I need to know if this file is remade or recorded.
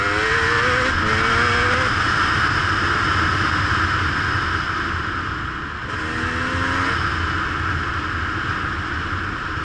recorded